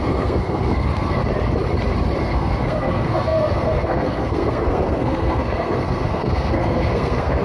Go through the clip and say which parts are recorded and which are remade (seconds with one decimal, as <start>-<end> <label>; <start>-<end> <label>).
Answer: 0.0-1.2 remade; 1.2-2.2 recorded; 2.2-7.4 remade